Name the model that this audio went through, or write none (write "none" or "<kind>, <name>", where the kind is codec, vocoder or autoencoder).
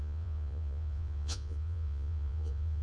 vocoder, Vocos